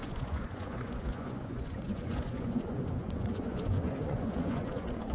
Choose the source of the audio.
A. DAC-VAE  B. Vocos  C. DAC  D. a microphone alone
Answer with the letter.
B